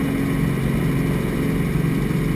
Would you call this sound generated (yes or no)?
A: no